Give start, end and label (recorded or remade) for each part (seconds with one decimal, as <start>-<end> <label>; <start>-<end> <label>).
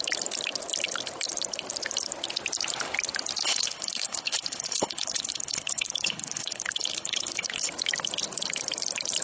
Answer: 0.0-3.4 recorded; 3.4-7.7 remade; 7.7-9.2 recorded